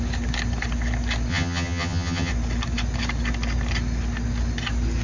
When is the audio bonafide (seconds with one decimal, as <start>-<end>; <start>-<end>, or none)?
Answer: 0.0-1.3; 2.3-5.0